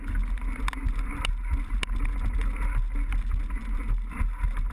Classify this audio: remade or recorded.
recorded